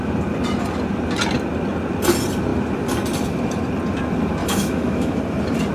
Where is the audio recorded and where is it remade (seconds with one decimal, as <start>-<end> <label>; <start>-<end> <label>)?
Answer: 0.0-4.4 recorded; 4.4-5.2 remade; 5.2-5.7 recorded